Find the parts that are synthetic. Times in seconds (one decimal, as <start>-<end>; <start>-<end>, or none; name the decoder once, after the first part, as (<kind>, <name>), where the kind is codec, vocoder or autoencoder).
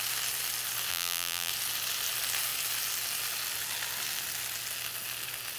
0.9-1.5 (vocoder, BigVGAN v2)